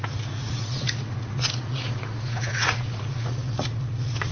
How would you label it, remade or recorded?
remade